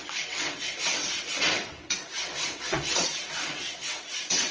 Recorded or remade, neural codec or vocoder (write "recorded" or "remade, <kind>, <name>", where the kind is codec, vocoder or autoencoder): remade, vocoder, WaveNeXt